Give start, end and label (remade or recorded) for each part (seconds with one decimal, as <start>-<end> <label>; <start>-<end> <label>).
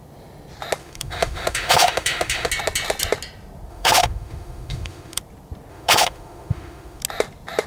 0.0-0.8 recorded; 0.8-2.5 remade; 2.5-3.7 recorded; 3.7-5.2 remade; 5.2-5.7 recorded; 5.7-7.0 remade; 7.0-7.7 recorded